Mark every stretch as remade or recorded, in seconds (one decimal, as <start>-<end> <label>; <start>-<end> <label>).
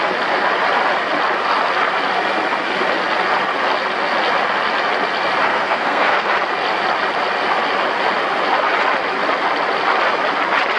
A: 0.0-5.5 recorded; 5.5-6.3 remade; 6.3-10.8 recorded